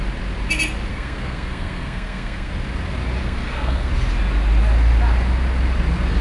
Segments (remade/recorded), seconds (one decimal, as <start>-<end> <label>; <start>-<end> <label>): 0.0-0.9 recorded; 0.9-2.5 remade; 2.5-3.2 recorded; 3.2-3.9 remade; 3.9-6.2 recorded